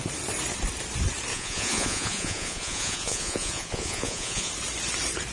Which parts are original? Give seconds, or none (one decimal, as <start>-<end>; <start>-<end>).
0.0-1.3; 4.5-5.3